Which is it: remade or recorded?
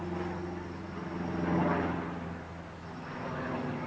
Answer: recorded